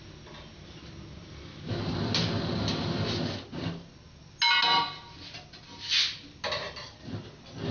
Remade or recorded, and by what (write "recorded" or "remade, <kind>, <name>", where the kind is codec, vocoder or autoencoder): recorded